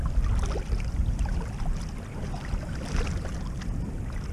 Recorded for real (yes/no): yes